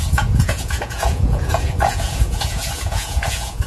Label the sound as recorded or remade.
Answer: remade